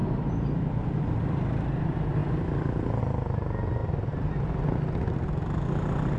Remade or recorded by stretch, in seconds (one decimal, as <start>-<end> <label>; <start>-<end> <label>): 0.0-6.2 recorded

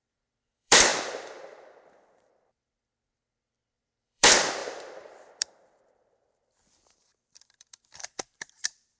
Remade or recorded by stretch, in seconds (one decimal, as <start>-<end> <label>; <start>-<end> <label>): 0.0-9.0 remade

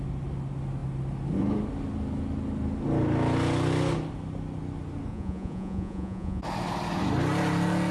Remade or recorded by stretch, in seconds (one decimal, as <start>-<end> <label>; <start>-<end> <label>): 0.0-5.1 recorded; 5.1-6.4 remade; 6.4-7.9 recorded